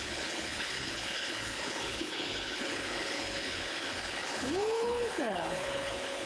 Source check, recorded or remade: remade